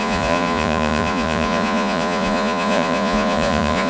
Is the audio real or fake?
fake